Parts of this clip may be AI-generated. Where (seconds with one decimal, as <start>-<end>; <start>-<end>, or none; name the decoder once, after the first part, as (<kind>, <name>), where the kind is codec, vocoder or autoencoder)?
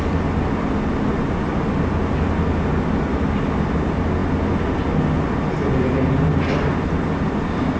none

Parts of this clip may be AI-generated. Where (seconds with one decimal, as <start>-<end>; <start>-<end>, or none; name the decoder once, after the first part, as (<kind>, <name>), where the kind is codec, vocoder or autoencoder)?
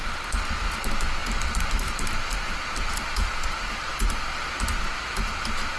none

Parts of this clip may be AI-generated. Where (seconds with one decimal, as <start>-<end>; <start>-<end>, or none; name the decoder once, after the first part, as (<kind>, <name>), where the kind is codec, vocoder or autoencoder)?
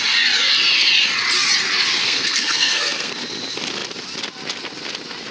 2.0-3.1 (codec, SNAC)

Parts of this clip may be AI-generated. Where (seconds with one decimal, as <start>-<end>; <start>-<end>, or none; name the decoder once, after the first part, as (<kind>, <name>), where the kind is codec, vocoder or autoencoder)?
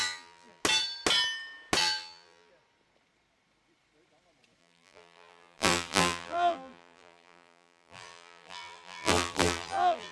0.0-0.6 (vocoder, BigVGAN v2); 1.8-2.5; 4.6-10.1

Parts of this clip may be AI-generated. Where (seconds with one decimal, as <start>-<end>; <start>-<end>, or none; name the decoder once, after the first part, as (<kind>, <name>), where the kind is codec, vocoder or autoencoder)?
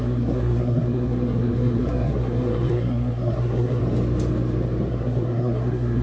0.0-3.8 (codec, SNAC); 4.9-6.0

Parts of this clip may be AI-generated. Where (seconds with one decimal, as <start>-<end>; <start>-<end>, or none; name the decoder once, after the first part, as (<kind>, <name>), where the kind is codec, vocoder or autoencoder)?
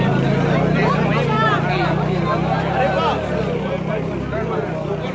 none